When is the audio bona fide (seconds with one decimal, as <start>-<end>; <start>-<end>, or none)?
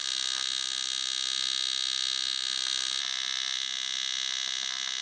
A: 0.0-5.0